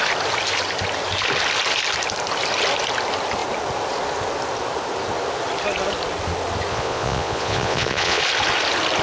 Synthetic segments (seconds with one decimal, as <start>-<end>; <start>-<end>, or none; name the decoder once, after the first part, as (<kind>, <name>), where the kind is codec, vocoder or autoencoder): 6.7-8.2 (vocoder, Vocos)

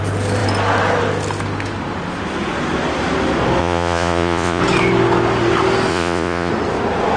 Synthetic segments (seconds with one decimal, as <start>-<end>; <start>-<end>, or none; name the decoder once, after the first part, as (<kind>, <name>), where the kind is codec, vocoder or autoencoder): 3.6-4.6 (vocoder, Vocos); 5.9-6.5

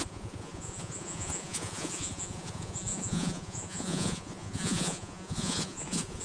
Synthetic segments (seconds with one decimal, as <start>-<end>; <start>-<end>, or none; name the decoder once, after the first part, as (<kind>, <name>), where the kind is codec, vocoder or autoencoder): 0.0-6.2 (vocoder, Vocos)

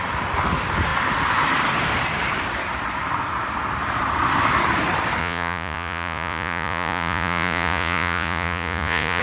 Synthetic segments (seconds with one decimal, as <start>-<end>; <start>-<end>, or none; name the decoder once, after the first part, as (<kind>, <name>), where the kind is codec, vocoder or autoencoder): 5.2-9.2 (vocoder, Vocos)

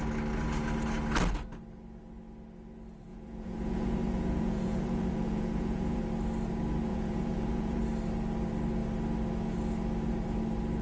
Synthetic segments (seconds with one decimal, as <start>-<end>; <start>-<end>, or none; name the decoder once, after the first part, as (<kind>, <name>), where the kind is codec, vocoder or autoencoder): 3.1-6.0 (vocoder, Vocos); 6.9-7.8

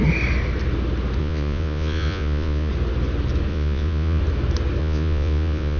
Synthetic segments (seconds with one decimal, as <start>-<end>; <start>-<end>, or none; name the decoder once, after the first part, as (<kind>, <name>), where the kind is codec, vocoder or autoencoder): 1.2-2.7 (vocoder, Vocos); 3.5-4.2; 4.8-5.8